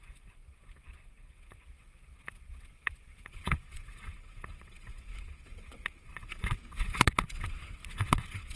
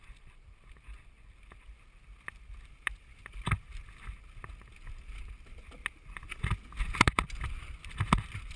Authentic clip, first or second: second